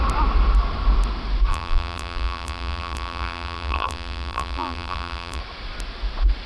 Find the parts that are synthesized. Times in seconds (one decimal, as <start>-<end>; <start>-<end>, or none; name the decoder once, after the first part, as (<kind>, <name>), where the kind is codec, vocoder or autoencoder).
1.5-5.4 (vocoder, BigVGAN v2)

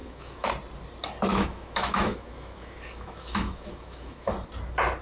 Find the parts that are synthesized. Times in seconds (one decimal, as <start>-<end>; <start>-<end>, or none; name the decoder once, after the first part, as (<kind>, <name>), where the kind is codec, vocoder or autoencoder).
0.0-0.5 (autoencoder, DAC-VAE); 1.3-4.3

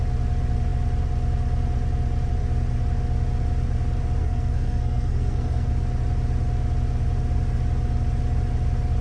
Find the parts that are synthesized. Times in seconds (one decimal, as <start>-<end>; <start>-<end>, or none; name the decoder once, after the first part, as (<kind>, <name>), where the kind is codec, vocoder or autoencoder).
4.2-5.7 (codec, SNAC)

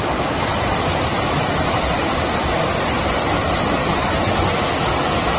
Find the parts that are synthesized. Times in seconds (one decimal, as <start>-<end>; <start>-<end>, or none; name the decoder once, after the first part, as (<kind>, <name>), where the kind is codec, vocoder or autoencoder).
none

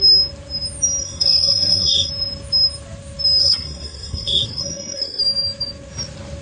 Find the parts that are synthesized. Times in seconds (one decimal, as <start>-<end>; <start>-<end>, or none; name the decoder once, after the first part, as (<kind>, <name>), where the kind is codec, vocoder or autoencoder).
1.0-2.1 (codec, SNAC); 3.4-5.2

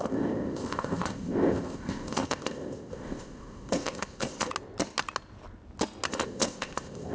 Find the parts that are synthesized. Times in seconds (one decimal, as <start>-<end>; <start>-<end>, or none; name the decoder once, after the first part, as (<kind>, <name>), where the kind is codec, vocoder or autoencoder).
0.0-4.5 (codec, ZipCodec); 6.1-7.1

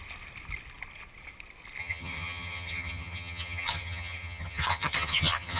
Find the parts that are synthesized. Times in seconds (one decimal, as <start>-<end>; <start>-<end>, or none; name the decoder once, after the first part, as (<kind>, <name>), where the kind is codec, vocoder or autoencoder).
1.8-5.6 (vocoder, HiFi-GAN)